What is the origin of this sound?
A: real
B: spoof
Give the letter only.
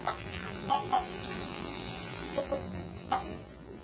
B